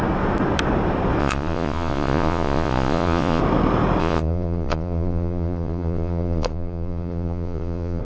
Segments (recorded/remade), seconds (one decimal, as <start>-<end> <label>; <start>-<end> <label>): 0.0-1.2 recorded; 1.2-3.4 remade; 3.4-4.0 recorded; 4.0-8.0 remade